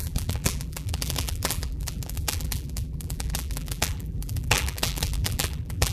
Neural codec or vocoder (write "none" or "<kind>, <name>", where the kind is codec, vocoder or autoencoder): vocoder, BigVGAN v2